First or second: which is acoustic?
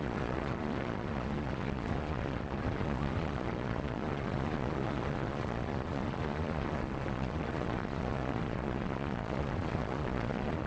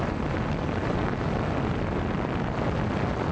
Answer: second